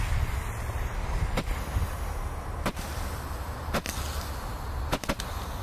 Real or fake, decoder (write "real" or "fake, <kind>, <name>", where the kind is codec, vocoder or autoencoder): real